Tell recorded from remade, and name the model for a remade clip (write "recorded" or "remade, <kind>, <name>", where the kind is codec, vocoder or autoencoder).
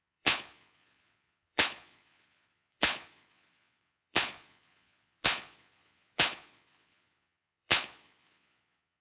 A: remade, vocoder, Vocos